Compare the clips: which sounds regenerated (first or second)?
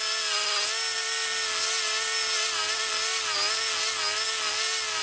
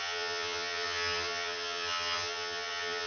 second